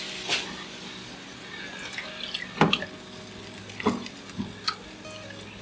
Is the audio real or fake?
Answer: real